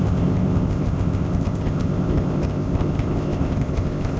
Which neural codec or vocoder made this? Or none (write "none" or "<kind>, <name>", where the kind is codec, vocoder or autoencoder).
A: codec, ZipCodec